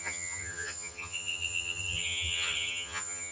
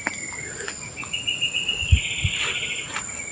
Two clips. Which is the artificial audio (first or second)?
first